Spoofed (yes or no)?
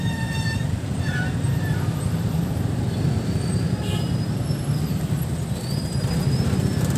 no